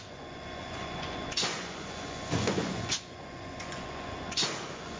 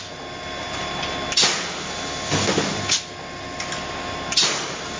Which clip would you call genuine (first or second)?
second